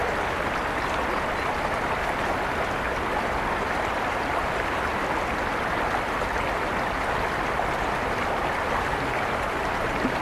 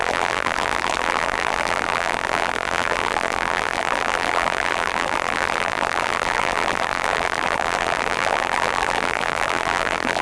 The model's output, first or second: second